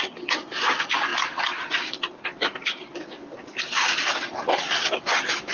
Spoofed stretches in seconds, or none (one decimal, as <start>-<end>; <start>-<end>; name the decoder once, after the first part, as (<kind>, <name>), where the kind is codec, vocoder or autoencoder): 0.0-1.1 (vocoder, BigVGAN v2); 2.2-5.5